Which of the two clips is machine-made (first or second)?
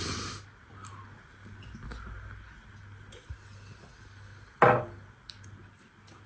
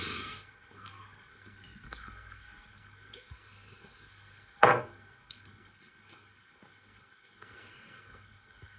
second